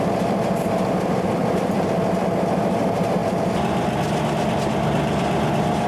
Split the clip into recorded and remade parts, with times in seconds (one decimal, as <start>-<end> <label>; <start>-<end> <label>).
0.0-5.9 recorded